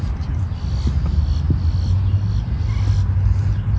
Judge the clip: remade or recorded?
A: recorded